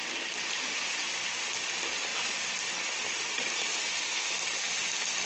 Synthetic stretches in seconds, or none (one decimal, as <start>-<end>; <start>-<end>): none